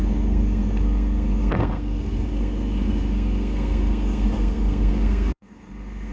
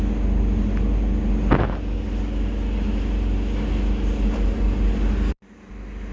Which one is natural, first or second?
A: second